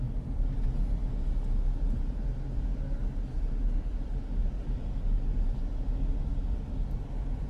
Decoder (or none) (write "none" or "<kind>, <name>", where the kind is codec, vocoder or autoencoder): none